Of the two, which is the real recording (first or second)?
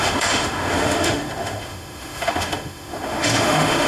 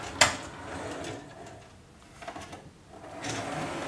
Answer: second